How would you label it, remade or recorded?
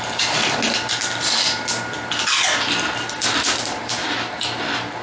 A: recorded